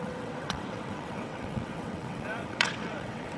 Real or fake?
fake